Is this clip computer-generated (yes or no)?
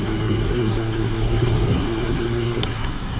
yes